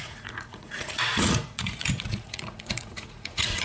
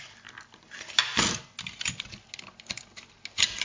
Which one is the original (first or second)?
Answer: second